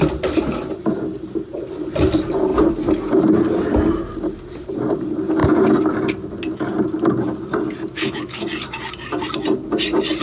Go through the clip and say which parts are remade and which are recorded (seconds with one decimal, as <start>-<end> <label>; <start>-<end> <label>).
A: 0.0-7.9 recorded; 7.9-8.4 remade; 8.4-10.2 recorded